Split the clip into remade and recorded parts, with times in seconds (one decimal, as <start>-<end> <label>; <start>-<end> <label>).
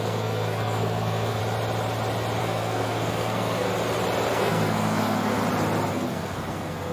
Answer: 0.0-1.4 remade; 1.4-2.4 recorded; 2.4-3.7 remade; 3.7-4.3 recorded; 4.3-5.4 remade; 5.4-5.9 recorded; 5.9-6.9 remade